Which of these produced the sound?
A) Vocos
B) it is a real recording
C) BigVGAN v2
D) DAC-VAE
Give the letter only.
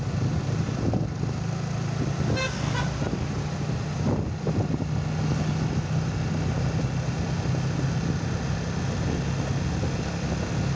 B